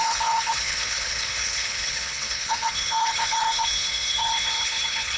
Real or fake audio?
fake